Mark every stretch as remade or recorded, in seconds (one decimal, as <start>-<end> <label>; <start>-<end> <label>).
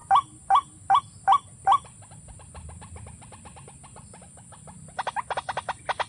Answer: 0.0-1.0 recorded; 1.0-6.1 remade